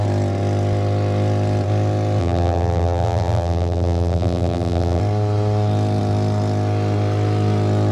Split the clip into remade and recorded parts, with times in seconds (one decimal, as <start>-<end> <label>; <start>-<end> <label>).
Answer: 0.0-2.2 recorded; 2.2-5.0 remade; 5.0-7.9 recorded